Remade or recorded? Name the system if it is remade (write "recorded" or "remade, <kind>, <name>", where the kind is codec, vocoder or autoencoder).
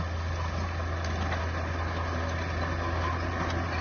recorded